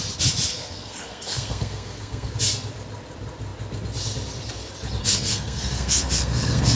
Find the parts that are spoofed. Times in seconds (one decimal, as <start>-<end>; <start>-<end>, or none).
0.5-2.4; 5.0-6.8